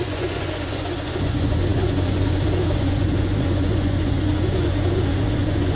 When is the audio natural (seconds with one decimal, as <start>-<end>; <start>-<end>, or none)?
none